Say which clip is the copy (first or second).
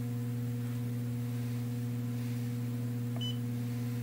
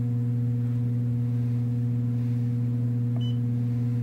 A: second